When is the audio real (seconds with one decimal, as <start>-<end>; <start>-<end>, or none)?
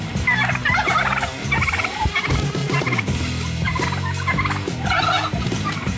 1.4-2.0; 2.6-5.0